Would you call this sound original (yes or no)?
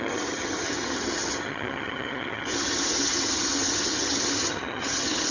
no